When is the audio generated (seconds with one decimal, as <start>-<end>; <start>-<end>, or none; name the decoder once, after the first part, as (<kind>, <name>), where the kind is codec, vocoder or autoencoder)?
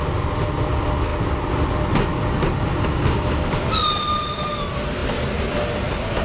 none